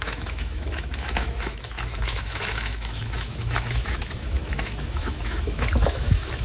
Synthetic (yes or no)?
yes